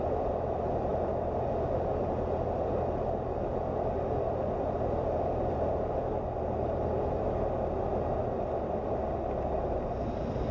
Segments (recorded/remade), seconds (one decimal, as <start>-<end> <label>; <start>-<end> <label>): 0.0-10.5 recorded

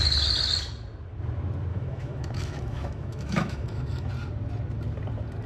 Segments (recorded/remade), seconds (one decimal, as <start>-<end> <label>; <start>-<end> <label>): 0.0-1.7 recorded; 1.7-4.1 remade; 4.1-5.5 recorded

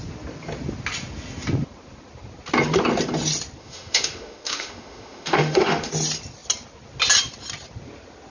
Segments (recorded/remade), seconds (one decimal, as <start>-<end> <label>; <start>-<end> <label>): 0.0-3.6 recorded; 3.6-5.9 remade; 5.9-8.3 recorded

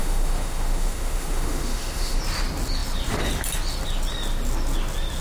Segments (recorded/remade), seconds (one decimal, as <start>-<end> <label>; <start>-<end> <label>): 0.0-2.2 remade; 2.2-5.2 recorded

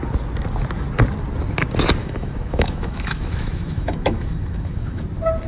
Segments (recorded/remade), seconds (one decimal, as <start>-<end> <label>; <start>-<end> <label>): 0.0-2.0 recorded; 2.0-5.0 remade; 5.0-5.5 recorded

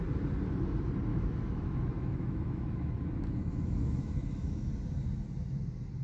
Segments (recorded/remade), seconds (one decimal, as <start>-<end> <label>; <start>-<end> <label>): 0.0-1.1 recorded; 1.1-4.7 remade; 4.7-6.0 recorded

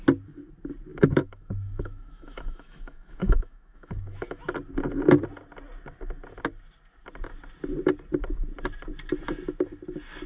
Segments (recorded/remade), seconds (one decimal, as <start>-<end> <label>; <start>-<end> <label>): 0.0-0.9 recorded; 0.9-4.4 remade; 4.4-10.3 recorded